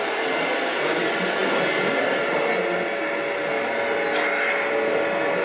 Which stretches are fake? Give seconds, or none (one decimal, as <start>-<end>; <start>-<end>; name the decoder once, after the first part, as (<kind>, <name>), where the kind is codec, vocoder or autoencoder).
none